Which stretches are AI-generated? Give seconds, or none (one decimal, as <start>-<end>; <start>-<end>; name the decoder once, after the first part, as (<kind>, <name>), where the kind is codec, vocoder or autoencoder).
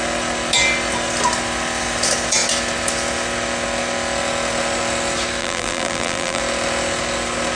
5.4-6.4 (vocoder, BigVGAN v2)